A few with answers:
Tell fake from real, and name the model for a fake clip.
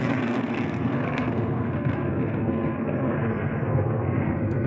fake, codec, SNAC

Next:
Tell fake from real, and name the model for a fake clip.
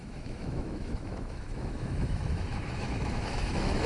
fake, autoencoder, DAC-VAE